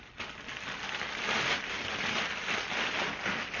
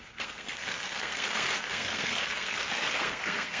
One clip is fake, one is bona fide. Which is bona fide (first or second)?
first